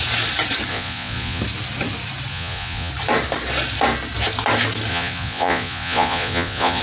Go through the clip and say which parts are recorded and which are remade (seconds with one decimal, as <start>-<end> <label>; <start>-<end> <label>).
0.0-0.7 recorded; 0.7-1.4 remade; 1.4-2.3 recorded; 2.3-2.9 remade; 2.9-4.9 recorded; 4.9-6.8 remade